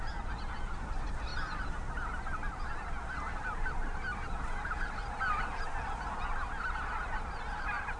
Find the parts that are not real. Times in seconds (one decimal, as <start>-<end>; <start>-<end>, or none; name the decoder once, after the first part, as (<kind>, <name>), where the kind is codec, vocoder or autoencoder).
none